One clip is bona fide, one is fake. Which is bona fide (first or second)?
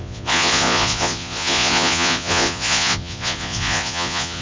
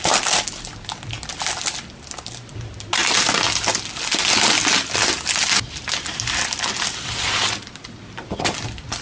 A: second